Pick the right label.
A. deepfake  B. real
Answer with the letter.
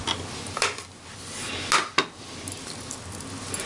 B